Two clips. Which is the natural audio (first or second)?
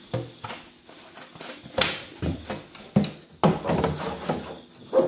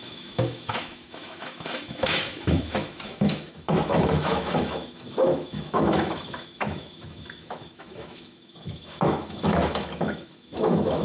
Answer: first